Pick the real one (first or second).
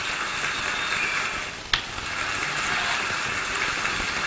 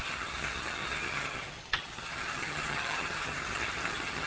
first